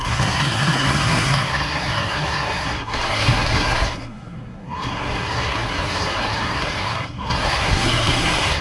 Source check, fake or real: fake